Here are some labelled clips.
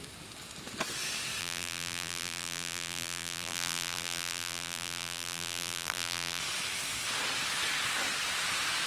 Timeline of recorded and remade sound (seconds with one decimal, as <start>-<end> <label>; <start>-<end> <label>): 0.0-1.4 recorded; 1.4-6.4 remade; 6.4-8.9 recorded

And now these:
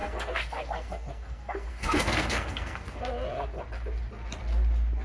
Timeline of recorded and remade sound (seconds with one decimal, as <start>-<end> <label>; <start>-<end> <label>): 0.0-3.0 remade; 3.0-5.0 recorded

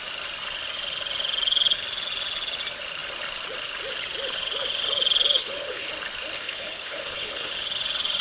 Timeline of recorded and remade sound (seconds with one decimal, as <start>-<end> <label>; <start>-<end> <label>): 0.0-5.4 recorded; 5.4-5.9 remade; 5.9-6.4 recorded; 6.4-7.5 remade; 7.5-8.2 recorded

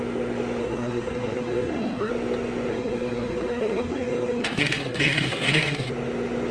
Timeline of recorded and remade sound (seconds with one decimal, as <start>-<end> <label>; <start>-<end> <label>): 0.0-0.6 recorded; 0.6-2.1 remade; 2.1-2.7 recorded; 2.7-5.9 remade; 5.9-6.5 recorded

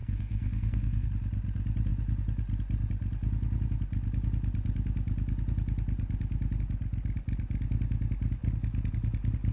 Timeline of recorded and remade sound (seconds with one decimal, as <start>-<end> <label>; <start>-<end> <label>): 0.0-1.1 remade; 1.1-9.5 recorded

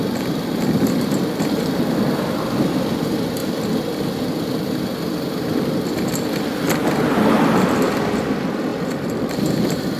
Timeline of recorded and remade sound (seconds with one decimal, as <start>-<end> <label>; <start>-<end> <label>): 0.0-3.4 remade; 3.4-7.4 recorded; 7.4-10.0 remade

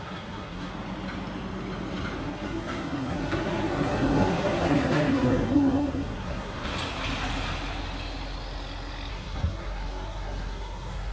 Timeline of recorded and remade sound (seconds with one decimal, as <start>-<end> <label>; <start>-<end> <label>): 0.0-0.7 remade; 0.7-2.2 recorded; 2.2-6.7 remade; 6.7-9.1 recorded; 9.1-11.1 remade